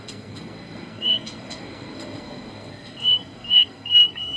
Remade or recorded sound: remade